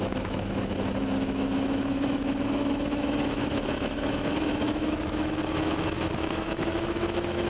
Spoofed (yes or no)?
yes